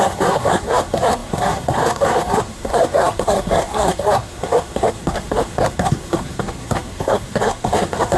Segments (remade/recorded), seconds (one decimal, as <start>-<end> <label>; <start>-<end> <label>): 0.0-8.2 remade